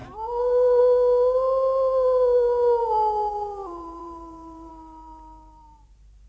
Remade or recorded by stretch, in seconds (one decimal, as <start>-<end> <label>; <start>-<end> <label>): 0.0-0.8 remade; 0.8-2.8 recorded; 2.8-4.7 remade; 4.7-6.3 recorded